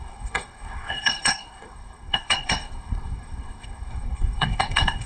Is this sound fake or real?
fake